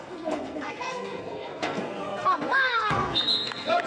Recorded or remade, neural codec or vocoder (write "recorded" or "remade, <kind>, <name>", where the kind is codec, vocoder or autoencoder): remade, codec, SNAC